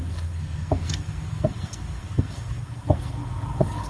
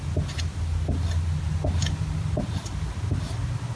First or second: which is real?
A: second